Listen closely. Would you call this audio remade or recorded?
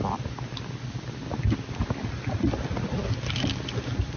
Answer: recorded